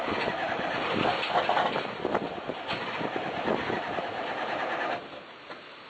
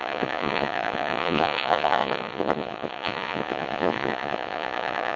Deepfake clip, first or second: second